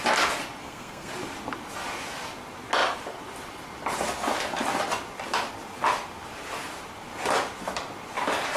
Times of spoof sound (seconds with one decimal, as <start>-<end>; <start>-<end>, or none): 0.6-1.1